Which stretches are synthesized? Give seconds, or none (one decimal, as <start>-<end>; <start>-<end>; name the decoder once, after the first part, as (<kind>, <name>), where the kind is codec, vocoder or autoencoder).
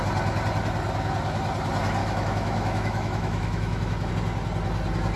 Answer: 2.0-4.1 (autoencoder, DAC-VAE)